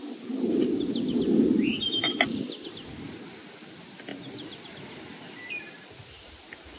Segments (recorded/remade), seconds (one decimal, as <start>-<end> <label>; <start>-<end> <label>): 0.0-6.8 recorded